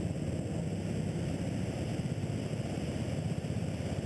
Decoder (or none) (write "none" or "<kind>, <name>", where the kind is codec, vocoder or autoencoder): none